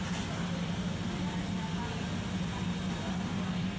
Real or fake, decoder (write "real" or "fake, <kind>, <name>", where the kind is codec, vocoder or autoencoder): real